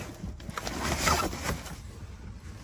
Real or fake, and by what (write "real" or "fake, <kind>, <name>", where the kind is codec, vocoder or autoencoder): real